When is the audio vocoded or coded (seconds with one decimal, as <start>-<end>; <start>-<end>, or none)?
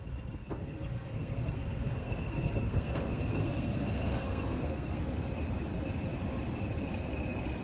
0.4-5.0